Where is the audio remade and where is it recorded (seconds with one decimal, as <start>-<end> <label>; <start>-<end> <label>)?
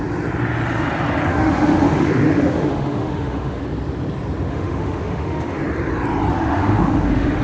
0.0-1.3 recorded; 1.3-3.6 remade; 3.6-4.5 recorded; 4.5-5.6 remade; 5.6-6.3 recorded; 6.3-7.4 remade